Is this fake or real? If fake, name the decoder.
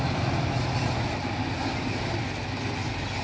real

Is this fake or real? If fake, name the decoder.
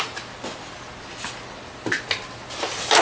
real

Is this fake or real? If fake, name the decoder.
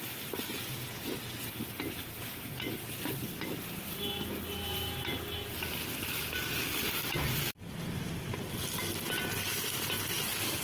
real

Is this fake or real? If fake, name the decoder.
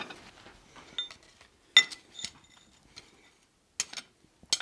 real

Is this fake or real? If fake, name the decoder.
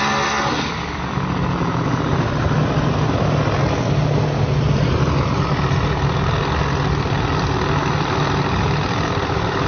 real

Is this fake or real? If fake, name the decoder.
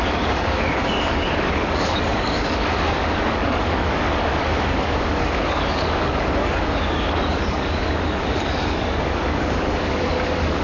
fake, codec, DAC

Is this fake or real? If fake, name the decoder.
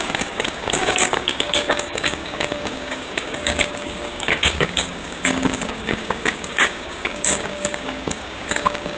fake, codec, DAC